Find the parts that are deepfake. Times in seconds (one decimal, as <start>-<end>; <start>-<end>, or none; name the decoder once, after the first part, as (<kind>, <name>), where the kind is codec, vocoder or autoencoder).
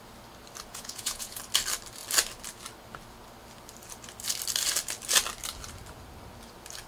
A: 0.7-1.4 (vocoder, Vocos)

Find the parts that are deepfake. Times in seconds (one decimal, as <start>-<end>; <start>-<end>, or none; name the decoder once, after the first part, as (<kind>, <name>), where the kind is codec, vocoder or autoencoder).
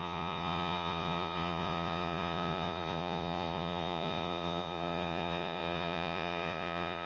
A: 0.0-7.1 (vocoder, Vocos)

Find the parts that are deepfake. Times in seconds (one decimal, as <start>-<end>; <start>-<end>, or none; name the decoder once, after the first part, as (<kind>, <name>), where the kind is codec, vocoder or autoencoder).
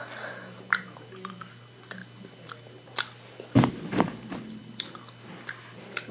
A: none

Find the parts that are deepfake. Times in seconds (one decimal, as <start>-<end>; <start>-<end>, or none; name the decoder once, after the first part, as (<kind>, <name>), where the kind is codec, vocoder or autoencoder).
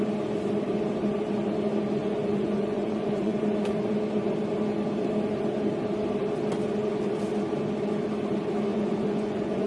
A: 2.0-3.4 (vocoder, Vocos); 8.7-9.7